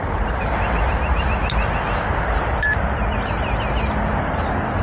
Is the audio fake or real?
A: real